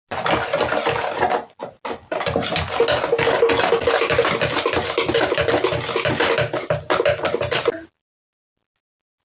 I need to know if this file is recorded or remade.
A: recorded